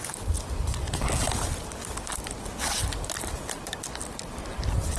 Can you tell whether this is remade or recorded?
recorded